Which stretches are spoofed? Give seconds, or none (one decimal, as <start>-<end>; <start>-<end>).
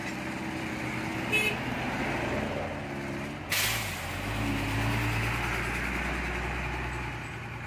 none